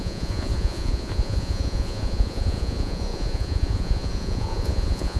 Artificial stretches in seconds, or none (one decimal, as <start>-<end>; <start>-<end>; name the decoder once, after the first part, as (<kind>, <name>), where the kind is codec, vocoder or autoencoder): 0.0-5.2 (vocoder, Vocos)